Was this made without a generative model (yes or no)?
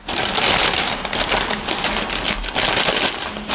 yes